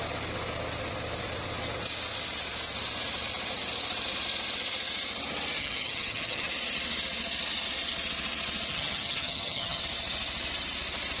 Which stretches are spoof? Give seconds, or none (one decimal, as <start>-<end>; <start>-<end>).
5.6-6.5; 8.7-9.8